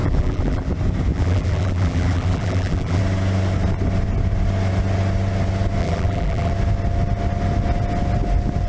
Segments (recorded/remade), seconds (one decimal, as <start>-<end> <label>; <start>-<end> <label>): 0.0-0.7 remade; 0.7-1.1 recorded; 1.1-3.0 remade; 3.0-5.8 recorded; 5.8-6.5 remade; 6.5-8.7 recorded

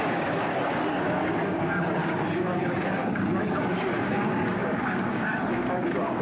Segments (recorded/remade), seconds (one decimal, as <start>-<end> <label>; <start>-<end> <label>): 0.0-2.0 remade; 2.0-2.6 recorded; 2.6-6.2 remade